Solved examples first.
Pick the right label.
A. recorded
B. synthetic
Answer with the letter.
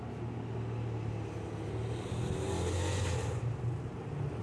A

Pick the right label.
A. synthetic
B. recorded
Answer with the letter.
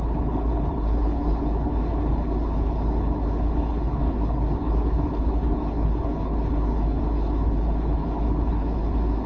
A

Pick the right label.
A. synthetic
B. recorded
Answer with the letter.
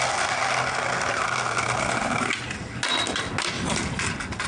B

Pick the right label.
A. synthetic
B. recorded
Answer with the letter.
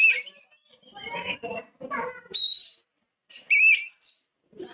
B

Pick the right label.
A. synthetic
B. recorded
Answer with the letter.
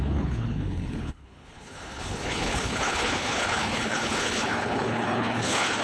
A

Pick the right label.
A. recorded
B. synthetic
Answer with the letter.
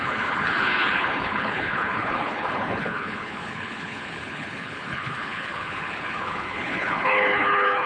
B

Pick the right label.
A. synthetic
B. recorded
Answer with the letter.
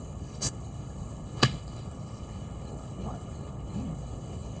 A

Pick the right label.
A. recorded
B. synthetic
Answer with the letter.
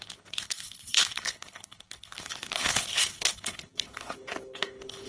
B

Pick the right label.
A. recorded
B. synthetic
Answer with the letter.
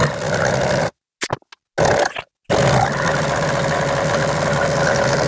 A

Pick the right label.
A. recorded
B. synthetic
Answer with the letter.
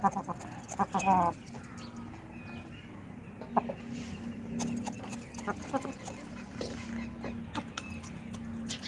A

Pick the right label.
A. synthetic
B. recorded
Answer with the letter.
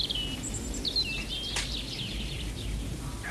B